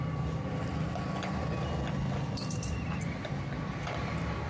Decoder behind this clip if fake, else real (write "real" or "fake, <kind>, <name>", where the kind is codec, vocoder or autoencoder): real